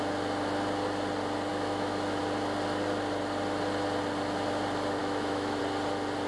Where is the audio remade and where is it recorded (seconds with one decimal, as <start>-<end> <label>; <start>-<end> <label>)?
0.0-1.5 recorded; 1.5-2.2 remade; 2.2-5.0 recorded; 5.0-5.6 remade; 5.6-6.3 recorded